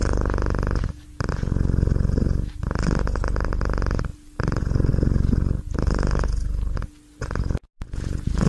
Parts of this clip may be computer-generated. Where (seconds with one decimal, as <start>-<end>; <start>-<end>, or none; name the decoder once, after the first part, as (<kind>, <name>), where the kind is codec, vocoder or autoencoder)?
none